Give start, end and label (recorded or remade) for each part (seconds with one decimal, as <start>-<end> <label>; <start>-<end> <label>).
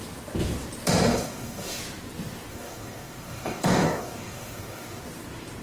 0.0-1.1 recorded; 1.1-1.8 remade; 1.8-2.5 recorded; 2.5-5.0 remade; 5.0-5.6 recorded